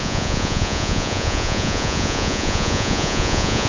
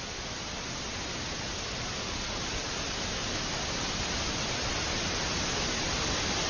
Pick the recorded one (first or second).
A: second